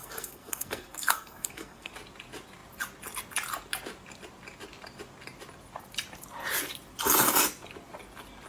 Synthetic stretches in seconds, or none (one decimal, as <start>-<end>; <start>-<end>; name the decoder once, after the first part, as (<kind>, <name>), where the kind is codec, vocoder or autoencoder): 0.0-1.9 (codec, SNAC)